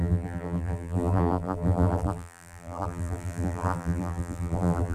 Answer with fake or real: fake